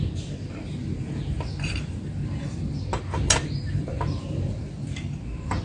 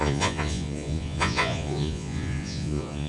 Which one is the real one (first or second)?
first